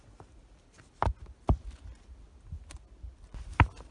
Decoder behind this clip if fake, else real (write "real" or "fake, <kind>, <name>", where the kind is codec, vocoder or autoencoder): real